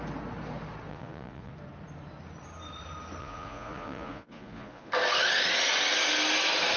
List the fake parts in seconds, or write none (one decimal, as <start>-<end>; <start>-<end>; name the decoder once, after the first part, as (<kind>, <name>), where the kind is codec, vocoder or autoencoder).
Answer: 0.9-1.5 (vocoder, Vocos); 3.2-4.9